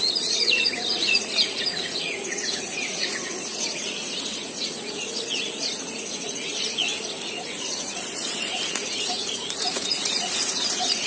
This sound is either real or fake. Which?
fake